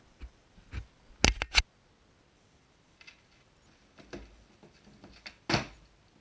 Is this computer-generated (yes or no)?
no